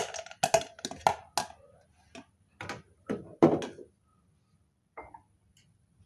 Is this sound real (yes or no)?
yes